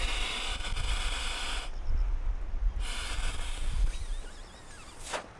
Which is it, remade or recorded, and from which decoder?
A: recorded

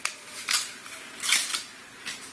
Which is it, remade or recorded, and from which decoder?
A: remade, vocoder, BigVGAN v2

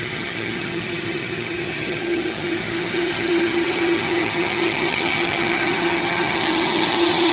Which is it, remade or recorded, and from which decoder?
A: remade, vocoder, HiFi-GAN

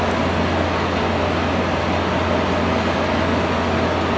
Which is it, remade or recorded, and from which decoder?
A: recorded